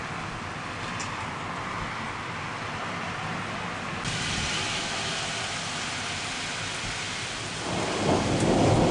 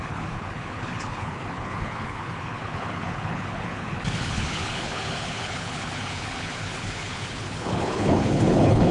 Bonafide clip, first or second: first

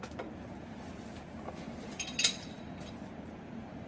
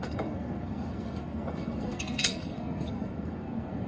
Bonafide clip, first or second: first